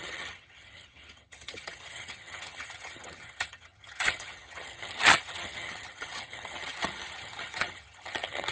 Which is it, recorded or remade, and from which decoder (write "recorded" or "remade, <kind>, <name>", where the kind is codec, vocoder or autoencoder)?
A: remade, vocoder, HiFi-GAN